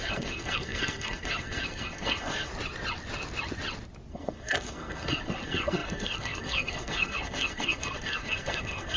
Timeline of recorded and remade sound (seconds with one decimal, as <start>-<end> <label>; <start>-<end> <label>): 0.0-2.5 remade; 2.5-4.1 recorded; 4.1-9.0 remade